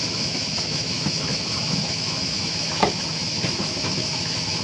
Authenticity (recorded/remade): remade